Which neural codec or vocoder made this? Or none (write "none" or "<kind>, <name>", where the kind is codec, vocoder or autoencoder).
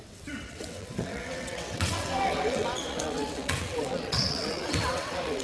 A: vocoder, WaveNeXt